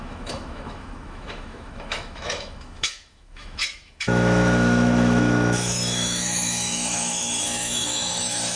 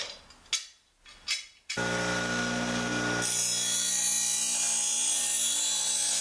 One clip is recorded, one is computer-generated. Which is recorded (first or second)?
second